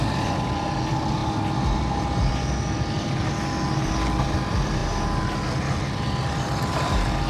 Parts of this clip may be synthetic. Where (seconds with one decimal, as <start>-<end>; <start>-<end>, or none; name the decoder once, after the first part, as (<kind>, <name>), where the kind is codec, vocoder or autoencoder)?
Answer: none